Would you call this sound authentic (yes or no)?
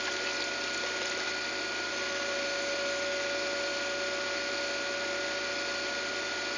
yes